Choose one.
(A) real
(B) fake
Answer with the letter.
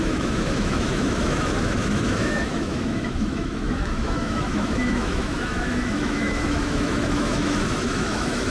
B